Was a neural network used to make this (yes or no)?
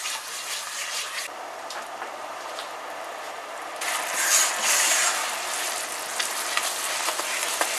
yes